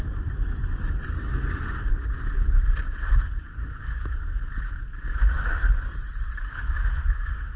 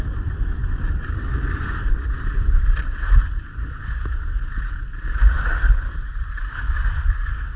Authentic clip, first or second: first